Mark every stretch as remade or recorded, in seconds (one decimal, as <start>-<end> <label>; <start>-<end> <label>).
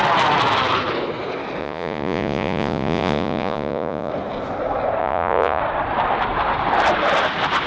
0.0-1.6 recorded; 1.6-4.1 remade; 4.1-5.0 recorded; 5.0-5.6 remade; 5.6-7.7 recorded